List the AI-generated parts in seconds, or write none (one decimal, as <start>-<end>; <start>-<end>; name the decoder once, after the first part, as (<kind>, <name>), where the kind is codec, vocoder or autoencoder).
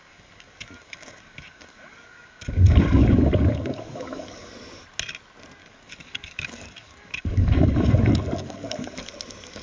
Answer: 0.0-4.5 (codec, DAC); 5.6-9.1